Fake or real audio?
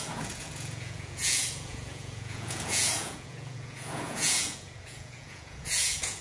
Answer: fake